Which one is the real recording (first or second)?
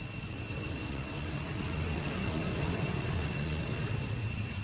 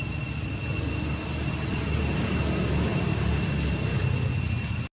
second